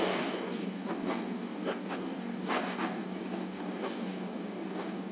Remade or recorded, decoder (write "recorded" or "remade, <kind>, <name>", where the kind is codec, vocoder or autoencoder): remade, codec, DAC